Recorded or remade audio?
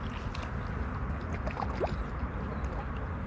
recorded